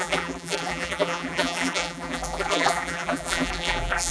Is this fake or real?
fake